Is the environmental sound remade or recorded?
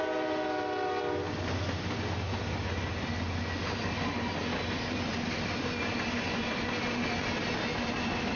recorded